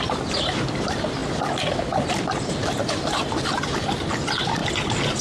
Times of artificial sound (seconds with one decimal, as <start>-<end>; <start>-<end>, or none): 0.0-1.2; 2.0-5.2